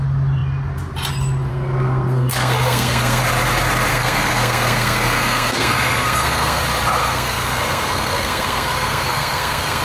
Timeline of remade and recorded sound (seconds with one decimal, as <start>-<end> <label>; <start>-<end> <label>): 0.0-1.5 recorded; 1.5-3.2 remade; 3.2-3.9 recorded; 3.9-6.6 remade; 6.6-7.0 recorded; 7.0-9.8 remade